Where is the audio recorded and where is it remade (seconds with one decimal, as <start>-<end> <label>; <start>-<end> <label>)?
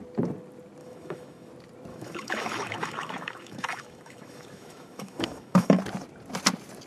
0.0-0.8 recorded; 0.8-1.5 remade; 1.5-1.9 recorded; 1.9-5.8 remade; 5.8-6.9 recorded